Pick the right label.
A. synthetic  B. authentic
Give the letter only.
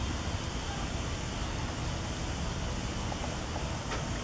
B